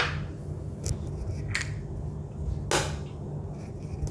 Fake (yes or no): no